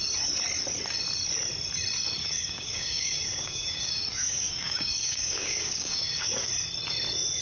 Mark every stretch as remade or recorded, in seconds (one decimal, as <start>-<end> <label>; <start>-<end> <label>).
0.0-2.2 recorded; 2.2-6.5 remade; 6.5-7.4 recorded